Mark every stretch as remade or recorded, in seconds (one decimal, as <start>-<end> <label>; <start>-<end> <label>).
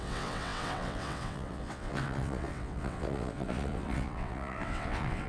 0.0-5.3 remade